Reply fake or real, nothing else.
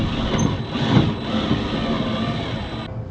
real